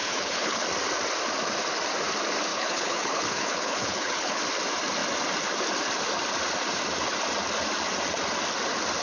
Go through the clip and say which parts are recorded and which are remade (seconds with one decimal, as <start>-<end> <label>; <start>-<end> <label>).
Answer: 0.0-0.6 remade; 0.6-2.5 recorded; 2.5-4.4 remade; 4.4-9.0 recorded